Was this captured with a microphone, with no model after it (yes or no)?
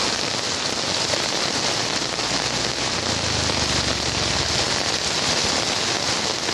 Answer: yes